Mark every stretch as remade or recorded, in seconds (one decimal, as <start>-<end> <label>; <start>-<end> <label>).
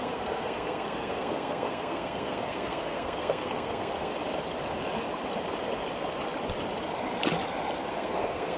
0.0-4.1 remade; 4.1-7.9 recorded; 7.9-8.6 remade